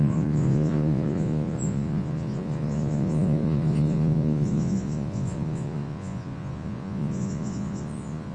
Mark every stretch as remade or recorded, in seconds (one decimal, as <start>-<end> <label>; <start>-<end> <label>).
0.0-8.3 remade